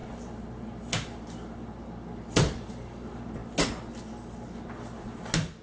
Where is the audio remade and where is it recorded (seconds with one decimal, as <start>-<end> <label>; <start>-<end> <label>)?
0.0-5.6 recorded

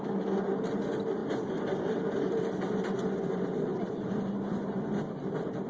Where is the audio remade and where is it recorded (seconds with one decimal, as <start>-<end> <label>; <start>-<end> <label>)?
0.0-5.7 remade

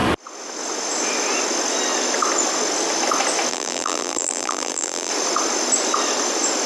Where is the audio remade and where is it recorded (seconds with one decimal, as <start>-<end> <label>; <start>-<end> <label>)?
0.0-3.5 recorded; 3.5-5.1 remade; 5.1-6.7 recorded

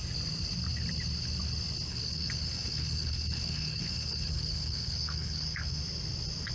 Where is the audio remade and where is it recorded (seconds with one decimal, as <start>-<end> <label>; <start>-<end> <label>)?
0.0-1.9 recorded; 1.9-5.8 remade; 5.8-6.5 recorded